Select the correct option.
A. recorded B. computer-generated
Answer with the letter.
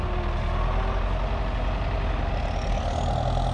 A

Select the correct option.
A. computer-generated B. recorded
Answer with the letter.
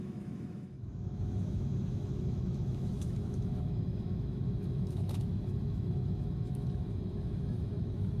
A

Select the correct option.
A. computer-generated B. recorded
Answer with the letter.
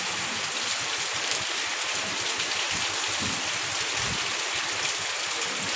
B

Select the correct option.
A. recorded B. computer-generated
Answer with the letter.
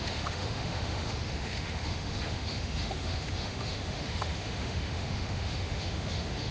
B